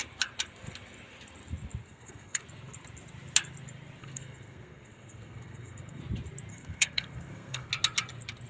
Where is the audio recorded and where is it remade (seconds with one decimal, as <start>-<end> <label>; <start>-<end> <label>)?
0.0-1.8 recorded; 1.8-2.4 remade; 2.4-4.0 recorded; 4.0-6.0 remade; 6.0-6.5 recorded; 6.5-7.7 remade; 7.7-8.5 recorded